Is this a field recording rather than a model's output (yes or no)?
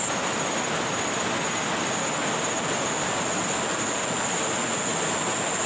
yes